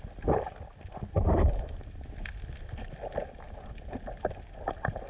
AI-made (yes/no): no